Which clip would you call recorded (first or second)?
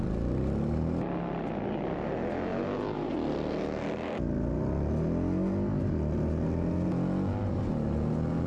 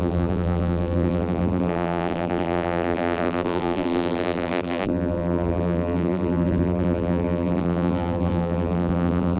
first